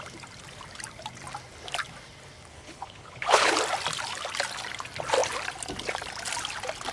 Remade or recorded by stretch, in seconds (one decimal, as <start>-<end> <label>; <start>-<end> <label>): 0.0-2.5 recorded; 2.5-3.5 remade; 3.5-6.9 recorded